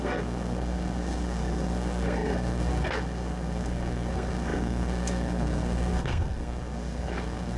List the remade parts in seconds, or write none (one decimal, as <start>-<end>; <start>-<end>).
0.0-7.6